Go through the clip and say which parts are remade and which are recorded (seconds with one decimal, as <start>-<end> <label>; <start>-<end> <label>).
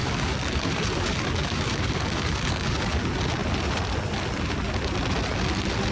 0.0-3.0 remade; 3.0-5.9 recorded